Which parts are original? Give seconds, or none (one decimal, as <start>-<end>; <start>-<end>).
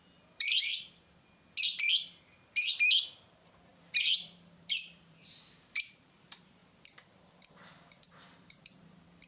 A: 0.7-3.2; 6.6-7.5